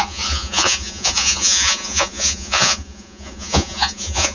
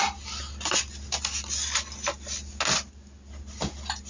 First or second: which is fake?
first